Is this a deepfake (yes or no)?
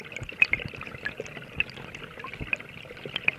no